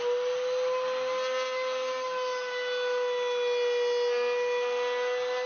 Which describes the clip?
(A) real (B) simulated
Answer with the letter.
A